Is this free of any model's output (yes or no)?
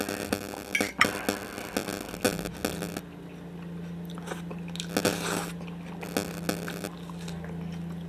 yes